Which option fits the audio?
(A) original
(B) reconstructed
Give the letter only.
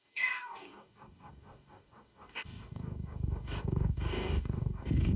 B